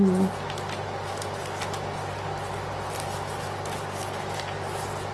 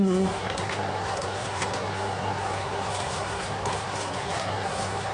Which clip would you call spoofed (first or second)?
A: second